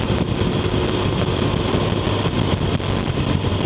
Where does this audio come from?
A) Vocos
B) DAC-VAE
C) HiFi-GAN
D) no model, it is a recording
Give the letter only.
D